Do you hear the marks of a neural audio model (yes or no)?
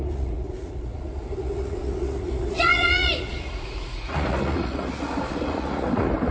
yes